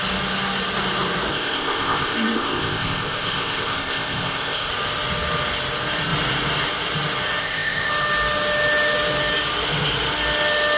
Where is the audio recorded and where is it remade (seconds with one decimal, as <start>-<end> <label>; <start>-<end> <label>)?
0.0-1.3 recorded; 1.3-4.7 remade; 4.7-7.4 recorded; 7.4-7.9 remade; 7.9-10.8 recorded